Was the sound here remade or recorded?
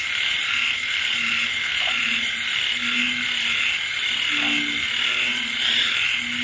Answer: recorded